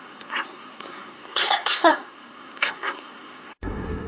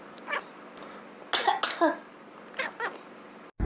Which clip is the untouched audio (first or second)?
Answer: second